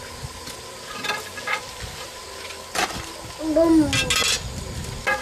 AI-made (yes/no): no